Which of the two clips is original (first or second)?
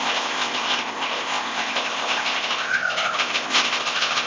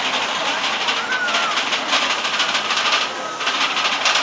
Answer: second